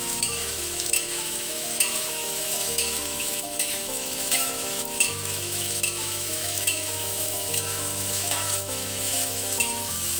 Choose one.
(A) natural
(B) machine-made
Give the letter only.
B